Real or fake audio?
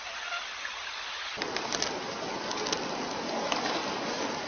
real